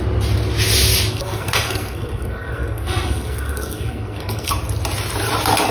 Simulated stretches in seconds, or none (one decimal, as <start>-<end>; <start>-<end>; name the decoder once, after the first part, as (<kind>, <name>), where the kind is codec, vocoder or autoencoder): 1.1-4.5 (codec, SNAC)